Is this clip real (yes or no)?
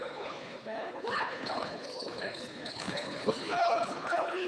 no